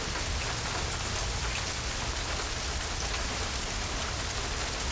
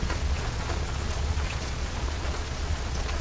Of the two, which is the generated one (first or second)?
second